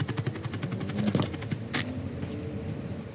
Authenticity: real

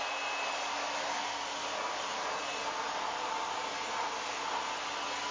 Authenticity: real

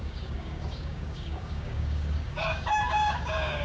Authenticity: fake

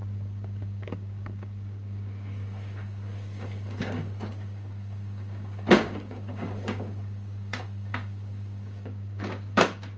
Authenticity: fake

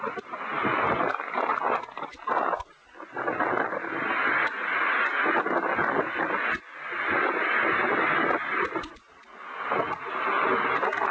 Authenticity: real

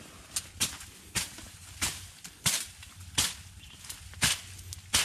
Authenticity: real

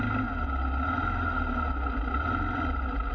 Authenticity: real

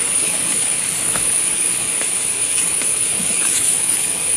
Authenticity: fake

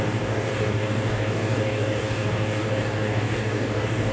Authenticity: fake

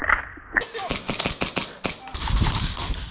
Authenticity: real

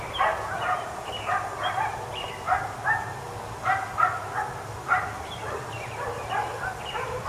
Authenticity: real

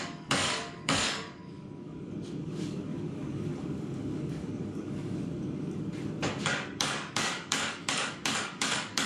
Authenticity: fake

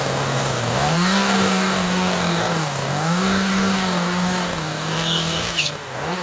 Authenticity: fake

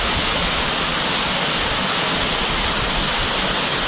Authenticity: real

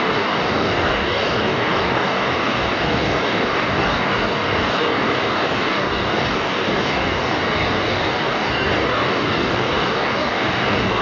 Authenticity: fake